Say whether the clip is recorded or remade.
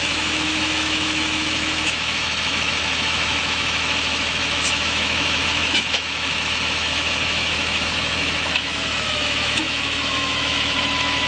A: remade